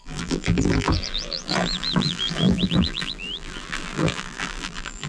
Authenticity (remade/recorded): remade